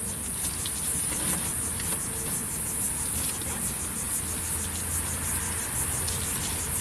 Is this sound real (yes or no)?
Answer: yes